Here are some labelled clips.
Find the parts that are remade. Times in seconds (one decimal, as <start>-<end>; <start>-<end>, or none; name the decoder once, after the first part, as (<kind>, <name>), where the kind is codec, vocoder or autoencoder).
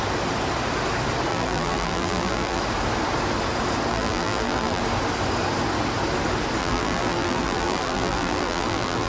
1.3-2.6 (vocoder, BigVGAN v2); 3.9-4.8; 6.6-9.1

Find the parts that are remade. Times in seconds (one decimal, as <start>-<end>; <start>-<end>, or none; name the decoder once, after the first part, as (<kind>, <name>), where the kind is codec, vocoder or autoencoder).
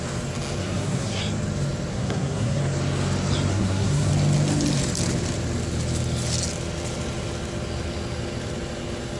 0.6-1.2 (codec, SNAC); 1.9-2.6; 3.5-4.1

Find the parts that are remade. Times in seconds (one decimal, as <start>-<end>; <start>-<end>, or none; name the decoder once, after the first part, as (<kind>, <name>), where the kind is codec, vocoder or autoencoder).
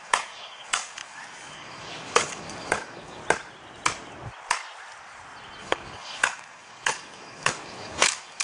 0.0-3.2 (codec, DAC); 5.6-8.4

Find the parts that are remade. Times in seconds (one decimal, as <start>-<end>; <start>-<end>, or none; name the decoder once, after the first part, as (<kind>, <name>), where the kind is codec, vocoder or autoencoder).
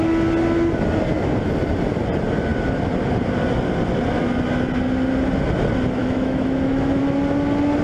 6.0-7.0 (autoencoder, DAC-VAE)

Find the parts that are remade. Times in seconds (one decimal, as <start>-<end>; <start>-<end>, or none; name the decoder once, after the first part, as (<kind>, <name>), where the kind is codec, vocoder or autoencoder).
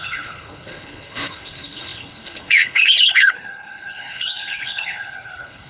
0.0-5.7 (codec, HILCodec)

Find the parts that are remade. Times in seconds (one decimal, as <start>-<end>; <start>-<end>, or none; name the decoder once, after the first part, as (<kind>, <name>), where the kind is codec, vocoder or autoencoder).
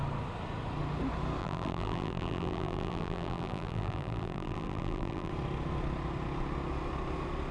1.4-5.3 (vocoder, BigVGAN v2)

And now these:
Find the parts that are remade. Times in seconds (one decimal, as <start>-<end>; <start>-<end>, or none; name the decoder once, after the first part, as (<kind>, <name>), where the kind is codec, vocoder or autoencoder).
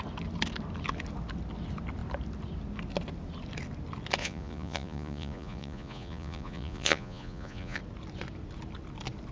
4.2-7.8 (vocoder, Vocos)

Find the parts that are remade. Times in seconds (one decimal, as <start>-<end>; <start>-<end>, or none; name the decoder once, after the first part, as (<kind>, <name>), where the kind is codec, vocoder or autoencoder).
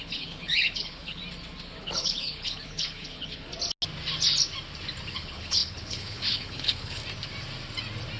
0.0-1.2 (codec, HILCodec); 1.8-3.5; 5.1-7.0